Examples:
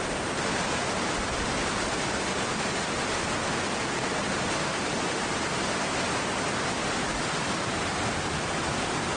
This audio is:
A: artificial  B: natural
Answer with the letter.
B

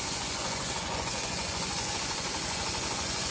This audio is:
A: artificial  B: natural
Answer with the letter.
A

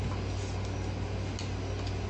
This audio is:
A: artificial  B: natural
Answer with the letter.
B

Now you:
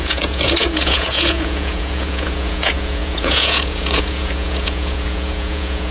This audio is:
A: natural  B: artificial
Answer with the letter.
B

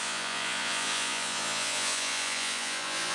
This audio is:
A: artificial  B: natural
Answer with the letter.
A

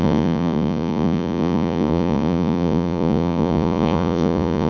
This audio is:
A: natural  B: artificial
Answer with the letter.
B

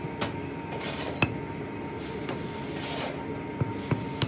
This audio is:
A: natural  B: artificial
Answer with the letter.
A